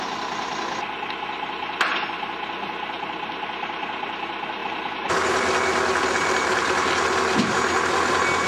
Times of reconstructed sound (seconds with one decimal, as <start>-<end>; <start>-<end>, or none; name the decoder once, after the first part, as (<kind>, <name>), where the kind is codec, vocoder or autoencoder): none